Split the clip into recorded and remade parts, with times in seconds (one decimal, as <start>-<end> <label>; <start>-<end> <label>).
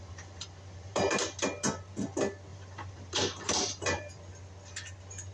0.0-1.2 remade; 1.2-2.5 recorded; 2.5-4.2 remade; 4.2-5.3 recorded